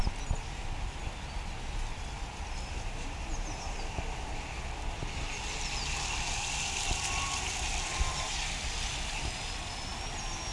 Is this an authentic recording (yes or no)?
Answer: yes